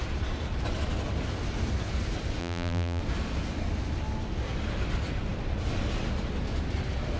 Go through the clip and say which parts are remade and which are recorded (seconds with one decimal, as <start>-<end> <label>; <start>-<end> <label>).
0.0-2.4 recorded; 2.4-3.0 remade; 3.0-7.2 recorded